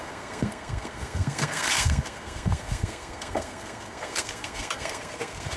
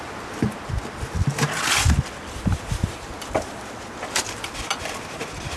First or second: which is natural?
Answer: second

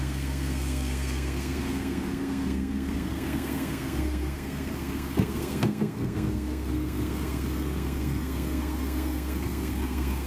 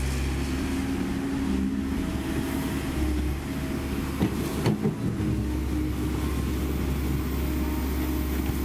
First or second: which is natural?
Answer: second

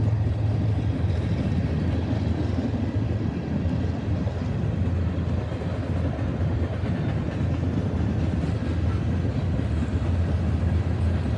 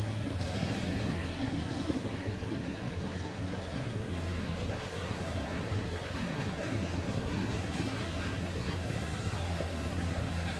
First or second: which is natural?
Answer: first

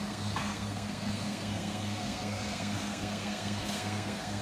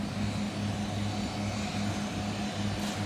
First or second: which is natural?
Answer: second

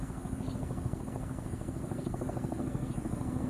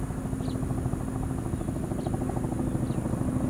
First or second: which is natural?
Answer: second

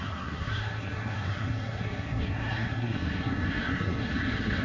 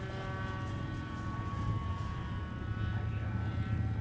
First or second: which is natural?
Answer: second